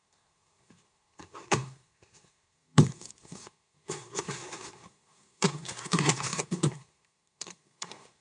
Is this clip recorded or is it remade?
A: remade